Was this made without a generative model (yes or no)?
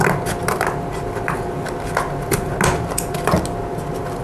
yes